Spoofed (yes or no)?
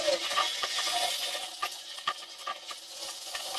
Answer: yes